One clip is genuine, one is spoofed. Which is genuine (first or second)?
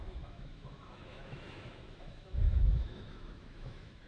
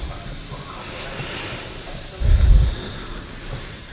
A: second